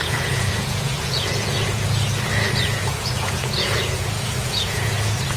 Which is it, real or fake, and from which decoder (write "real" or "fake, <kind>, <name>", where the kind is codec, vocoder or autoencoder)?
fake, vocoder, Vocos